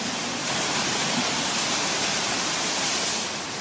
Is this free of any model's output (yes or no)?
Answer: yes